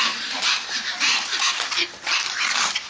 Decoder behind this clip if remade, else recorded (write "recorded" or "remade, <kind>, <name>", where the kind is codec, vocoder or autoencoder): recorded